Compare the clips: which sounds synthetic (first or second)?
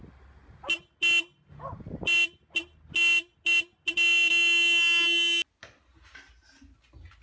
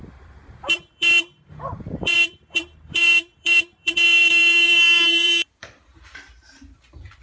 second